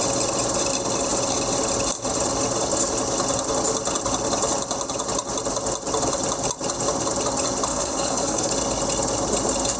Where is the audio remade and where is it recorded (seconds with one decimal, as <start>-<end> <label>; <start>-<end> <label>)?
0.0-7.7 recorded; 7.7-8.5 remade; 8.5-9.8 recorded